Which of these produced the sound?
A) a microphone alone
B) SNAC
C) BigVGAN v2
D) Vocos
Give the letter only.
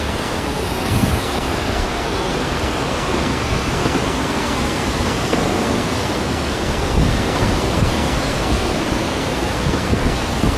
B